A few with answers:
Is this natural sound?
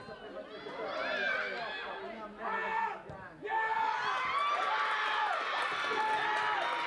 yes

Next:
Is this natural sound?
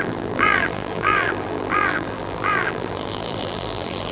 no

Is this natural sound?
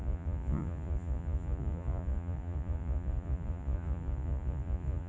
no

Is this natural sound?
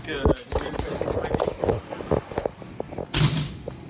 yes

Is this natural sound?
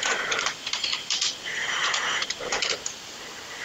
no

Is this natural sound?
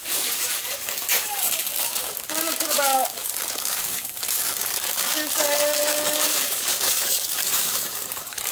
no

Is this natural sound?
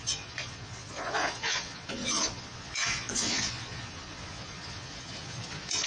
no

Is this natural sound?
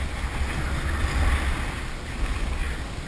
yes